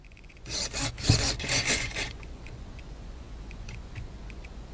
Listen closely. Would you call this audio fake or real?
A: fake